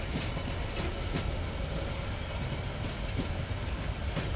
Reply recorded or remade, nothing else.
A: recorded